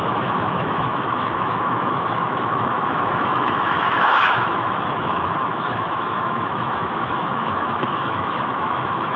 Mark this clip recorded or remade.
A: remade